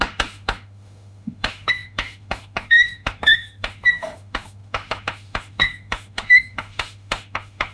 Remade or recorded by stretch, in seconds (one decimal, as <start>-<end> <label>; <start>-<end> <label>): 0.0-7.7 remade